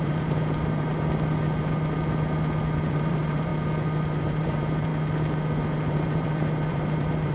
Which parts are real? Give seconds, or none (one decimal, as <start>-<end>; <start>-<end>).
0.9-2.9; 3.5-4.2; 4.9-5.9